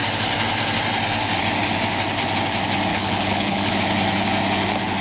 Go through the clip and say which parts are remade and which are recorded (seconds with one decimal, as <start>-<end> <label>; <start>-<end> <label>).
0.0-2.9 recorded; 2.9-3.7 remade; 3.7-5.0 recorded